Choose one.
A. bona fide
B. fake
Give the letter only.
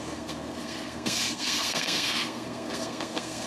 B